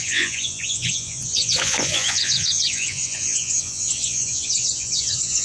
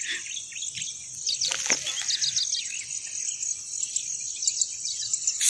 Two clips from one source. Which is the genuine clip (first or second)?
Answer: second